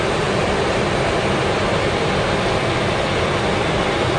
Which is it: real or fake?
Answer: real